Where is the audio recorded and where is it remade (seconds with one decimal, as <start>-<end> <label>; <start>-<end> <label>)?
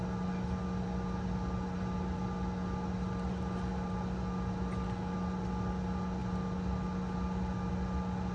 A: 0.0-8.3 recorded